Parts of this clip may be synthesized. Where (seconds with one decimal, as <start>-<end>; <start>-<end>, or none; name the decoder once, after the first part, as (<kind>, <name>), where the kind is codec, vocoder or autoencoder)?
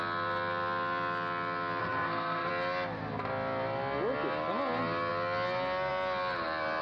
1.8-2.5 (codec, SNAC)